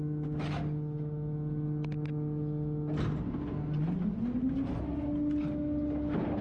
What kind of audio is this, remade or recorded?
recorded